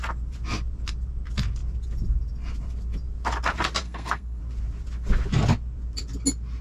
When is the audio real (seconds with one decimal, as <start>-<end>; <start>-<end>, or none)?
0.0-3.8; 4.4-6.6